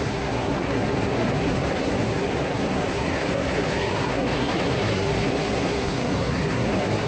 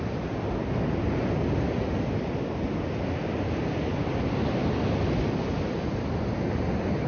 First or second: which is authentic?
second